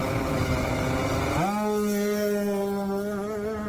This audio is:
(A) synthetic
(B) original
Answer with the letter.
B